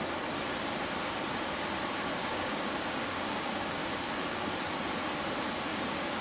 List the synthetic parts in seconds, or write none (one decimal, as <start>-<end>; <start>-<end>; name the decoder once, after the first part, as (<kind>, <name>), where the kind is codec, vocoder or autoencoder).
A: 2.2-4.5 (codec, DAC); 5.7-6.2